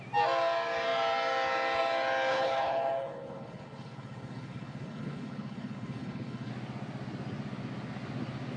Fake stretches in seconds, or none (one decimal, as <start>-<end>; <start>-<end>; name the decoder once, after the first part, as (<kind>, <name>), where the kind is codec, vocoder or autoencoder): 2.3-6.5 (codec, HILCodec)